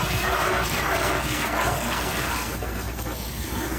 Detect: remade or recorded remade